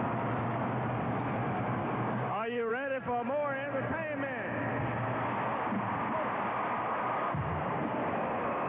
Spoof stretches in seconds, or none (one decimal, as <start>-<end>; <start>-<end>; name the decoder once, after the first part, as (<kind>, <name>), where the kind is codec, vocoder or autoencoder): 1.8-2.7 (codec, DAC)